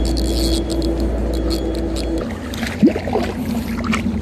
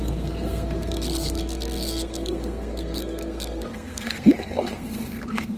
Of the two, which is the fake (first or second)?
second